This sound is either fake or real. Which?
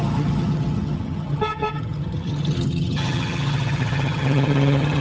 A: fake